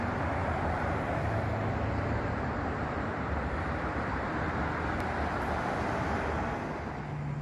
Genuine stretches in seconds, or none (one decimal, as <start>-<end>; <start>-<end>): 0.0-0.4; 4.8-7.4

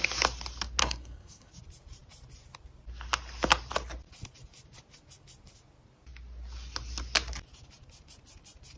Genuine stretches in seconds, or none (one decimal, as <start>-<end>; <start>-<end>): 0.0-0.8; 1.5-8.8

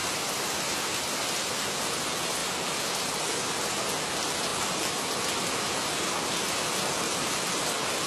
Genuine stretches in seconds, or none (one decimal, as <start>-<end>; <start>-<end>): 1.5-8.1

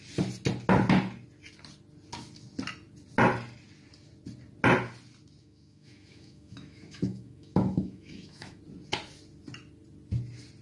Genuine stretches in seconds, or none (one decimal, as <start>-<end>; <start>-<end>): 0.0-5.4; 8.6-10.6

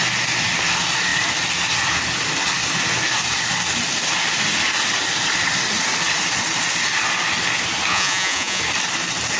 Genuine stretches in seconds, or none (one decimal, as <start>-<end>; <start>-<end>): 0.0-7.9; 8.6-9.4